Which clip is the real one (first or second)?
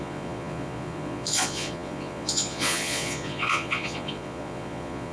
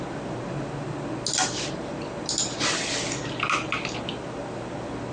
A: second